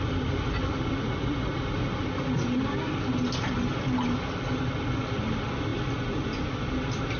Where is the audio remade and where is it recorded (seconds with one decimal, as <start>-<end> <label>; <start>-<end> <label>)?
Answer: 0.0-7.2 recorded